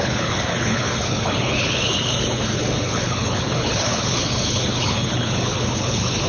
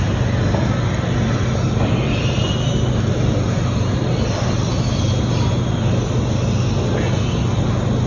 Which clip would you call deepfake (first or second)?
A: first